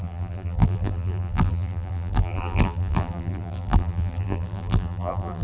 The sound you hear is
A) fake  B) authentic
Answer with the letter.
A